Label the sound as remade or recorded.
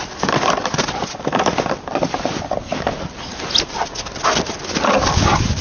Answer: recorded